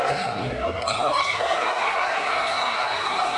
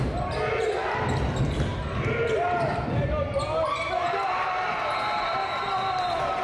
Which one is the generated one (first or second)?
first